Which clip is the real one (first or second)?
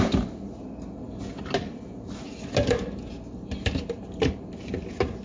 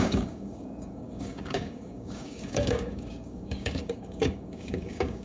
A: first